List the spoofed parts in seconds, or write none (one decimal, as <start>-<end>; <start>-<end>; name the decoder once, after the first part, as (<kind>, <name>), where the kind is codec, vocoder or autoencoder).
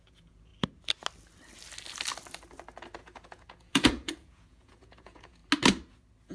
0.0-0.5 (vocoder, Vocos); 3.0-5.4